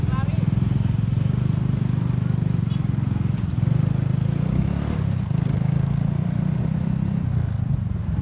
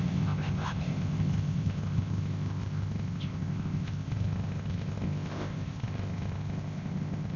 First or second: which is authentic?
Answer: first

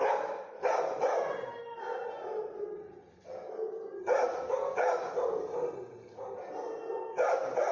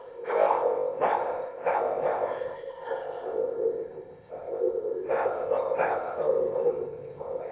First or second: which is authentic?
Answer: first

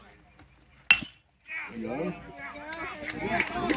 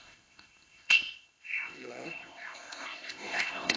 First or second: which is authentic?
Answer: first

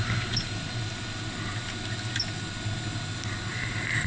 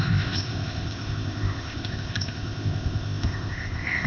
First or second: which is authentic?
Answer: first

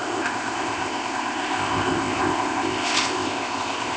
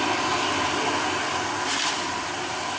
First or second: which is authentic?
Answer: second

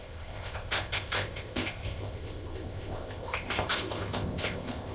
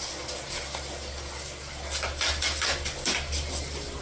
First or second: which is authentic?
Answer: second